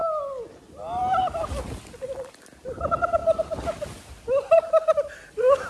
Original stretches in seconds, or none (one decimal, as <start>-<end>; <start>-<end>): 0.0-5.7